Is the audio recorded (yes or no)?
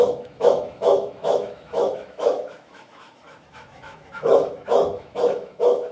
no